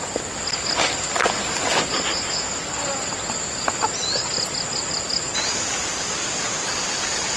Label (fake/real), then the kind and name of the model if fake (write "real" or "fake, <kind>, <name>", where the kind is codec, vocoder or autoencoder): real